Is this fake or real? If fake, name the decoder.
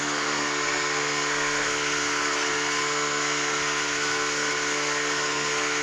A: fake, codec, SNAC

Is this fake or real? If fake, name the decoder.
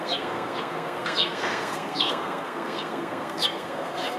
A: fake, codec, SNAC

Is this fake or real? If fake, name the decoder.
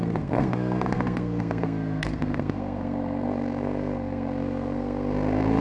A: fake, codec, SNAC